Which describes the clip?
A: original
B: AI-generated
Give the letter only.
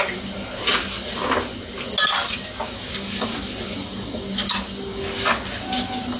A